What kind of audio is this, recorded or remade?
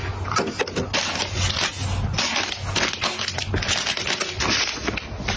recorded